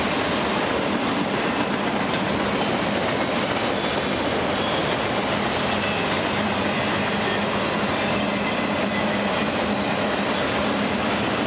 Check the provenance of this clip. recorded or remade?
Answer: recorded